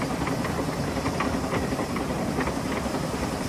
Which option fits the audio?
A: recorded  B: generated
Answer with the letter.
A